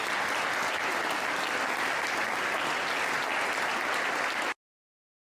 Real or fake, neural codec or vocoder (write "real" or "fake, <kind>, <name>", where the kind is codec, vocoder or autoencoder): real